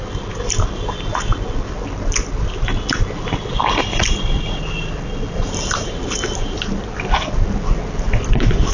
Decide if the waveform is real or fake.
real